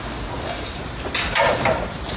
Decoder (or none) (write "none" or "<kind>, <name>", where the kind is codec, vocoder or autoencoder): none